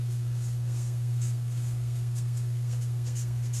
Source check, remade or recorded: remade